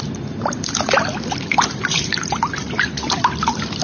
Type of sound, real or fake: real